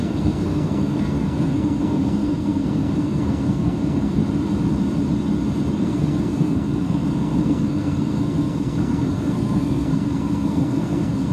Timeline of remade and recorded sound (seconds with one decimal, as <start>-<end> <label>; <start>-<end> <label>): 0.0-4.2 remade; 4.2-5.8 recorded; 5.8-11.3 remade